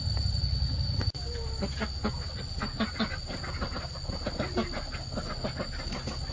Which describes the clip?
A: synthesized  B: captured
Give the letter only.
B